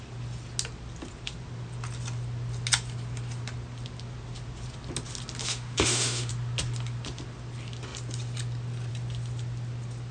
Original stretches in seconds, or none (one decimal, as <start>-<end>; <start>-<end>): 0.0-5.4; 6.3-10.1